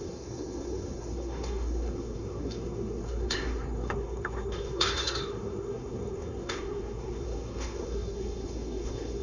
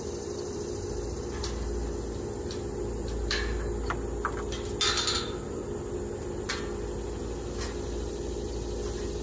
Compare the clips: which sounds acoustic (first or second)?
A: second